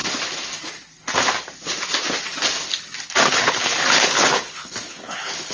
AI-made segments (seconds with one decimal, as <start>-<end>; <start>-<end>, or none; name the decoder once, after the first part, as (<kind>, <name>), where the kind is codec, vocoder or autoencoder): 3.3-5.5 (codec, HILCodec)